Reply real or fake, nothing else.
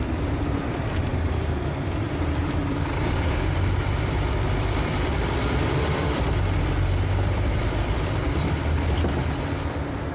fake